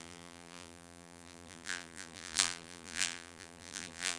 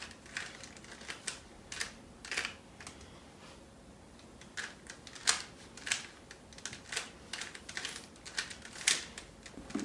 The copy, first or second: first